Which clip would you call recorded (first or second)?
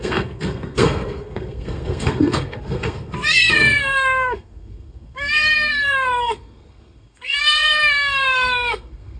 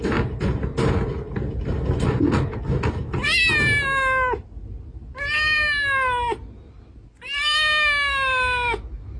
second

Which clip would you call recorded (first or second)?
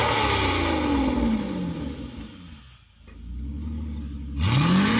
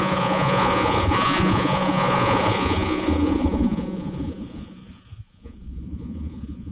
first